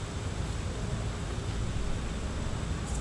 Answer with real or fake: real